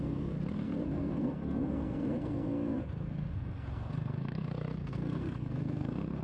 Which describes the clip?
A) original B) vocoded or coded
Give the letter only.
B